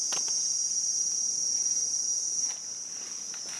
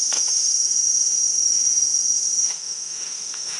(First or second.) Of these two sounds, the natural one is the first